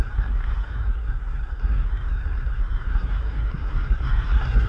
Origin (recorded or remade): remade